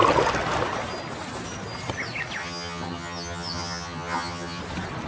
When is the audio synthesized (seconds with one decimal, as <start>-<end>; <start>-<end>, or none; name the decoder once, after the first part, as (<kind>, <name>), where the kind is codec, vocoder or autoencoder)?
2.4-4.6 (vocoder, HiFi-GAN)